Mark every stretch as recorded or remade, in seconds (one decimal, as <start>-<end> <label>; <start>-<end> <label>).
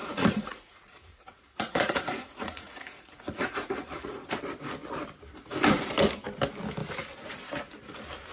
0.0-4.3 remade; 4.3-8.3 recorded